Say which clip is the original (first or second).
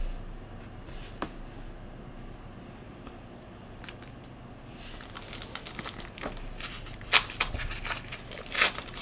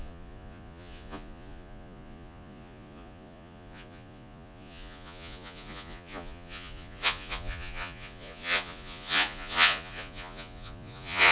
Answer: first